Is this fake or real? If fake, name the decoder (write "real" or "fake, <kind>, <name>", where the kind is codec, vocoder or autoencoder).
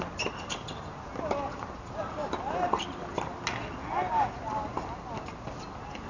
real